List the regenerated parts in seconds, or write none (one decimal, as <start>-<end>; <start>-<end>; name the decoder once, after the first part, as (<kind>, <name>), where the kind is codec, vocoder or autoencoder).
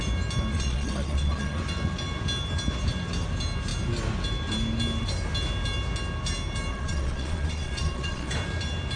0.5-1.6 (vocoder, Vocos); 6.7-8.3